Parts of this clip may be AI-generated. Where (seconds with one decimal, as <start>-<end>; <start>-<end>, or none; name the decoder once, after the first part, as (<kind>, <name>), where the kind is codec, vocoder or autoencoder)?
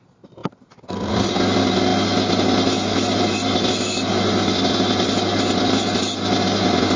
none